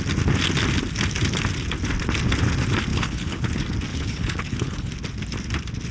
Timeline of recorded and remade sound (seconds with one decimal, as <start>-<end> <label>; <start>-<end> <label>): 0.0-2.9 recorded; 2.9-3.5 remade; 3.5-3.9 recorded; 3.9-4.9 remade; 4.9-5.9 recorded